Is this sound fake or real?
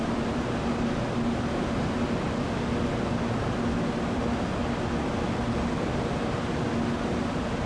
real